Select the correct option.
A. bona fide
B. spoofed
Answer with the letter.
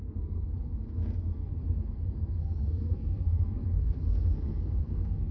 B